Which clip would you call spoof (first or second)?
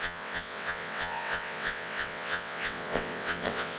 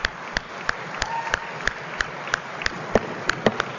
first